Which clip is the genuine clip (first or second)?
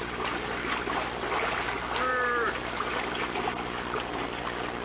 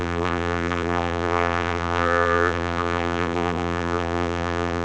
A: first